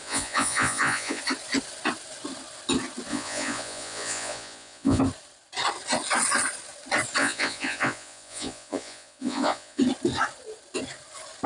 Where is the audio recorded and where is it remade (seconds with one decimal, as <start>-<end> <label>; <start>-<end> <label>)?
0.0-1.2 remade; 1.2-3.1 recorded; 3.1-5.0 remade; 5.0-7.2 recorded; 7.2-9.8 remade; 9.8-11.5 recorded